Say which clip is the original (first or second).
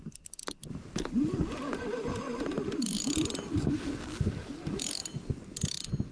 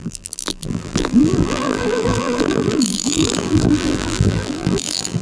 first